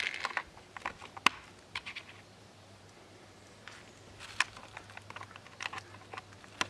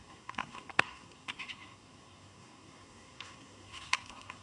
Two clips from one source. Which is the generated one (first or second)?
second